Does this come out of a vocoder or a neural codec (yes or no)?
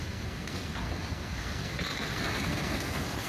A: yes